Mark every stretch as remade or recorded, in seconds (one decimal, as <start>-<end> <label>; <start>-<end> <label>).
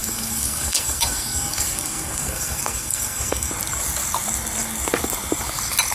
0.0-3.5 remade; 3.5-5.9 recorded